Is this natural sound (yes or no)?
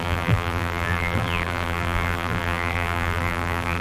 no